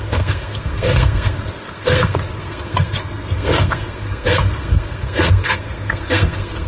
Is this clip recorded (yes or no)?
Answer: no